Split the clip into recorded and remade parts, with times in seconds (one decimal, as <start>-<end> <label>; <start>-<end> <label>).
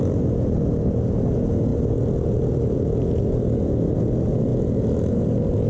0.0-5.7 recorded